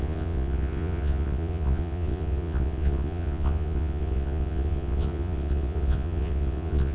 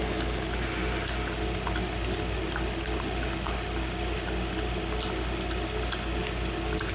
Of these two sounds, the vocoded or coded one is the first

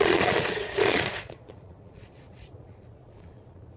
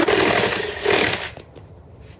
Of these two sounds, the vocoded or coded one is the first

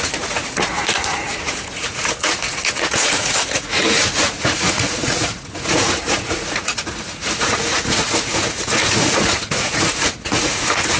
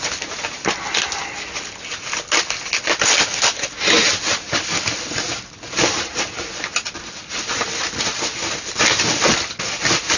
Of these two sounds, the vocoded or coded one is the first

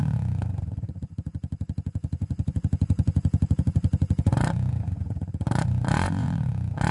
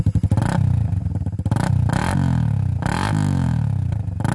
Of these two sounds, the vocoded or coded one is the first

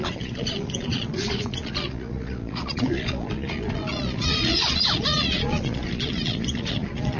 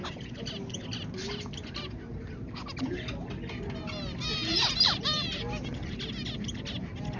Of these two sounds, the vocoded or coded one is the first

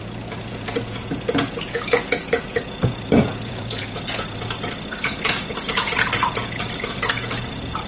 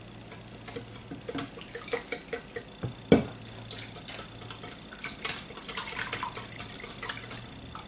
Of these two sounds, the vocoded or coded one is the first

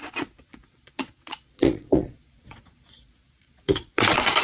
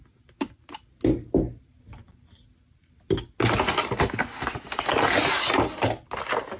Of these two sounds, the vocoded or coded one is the first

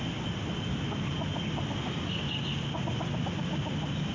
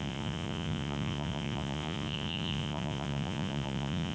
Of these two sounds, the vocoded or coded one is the second